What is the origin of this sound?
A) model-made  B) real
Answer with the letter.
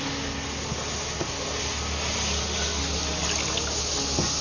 B